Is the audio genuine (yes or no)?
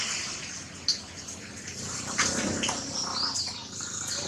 yes